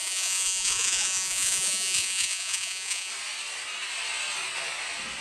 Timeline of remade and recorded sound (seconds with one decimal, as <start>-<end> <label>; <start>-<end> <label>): 0.0-3.1 remade; 3.1-5.2 recorded